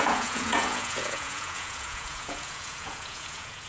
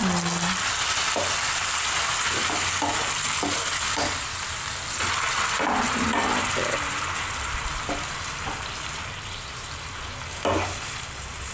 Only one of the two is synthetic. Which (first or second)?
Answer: first